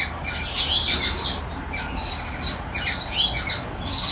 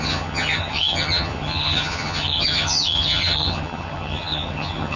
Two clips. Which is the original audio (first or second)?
first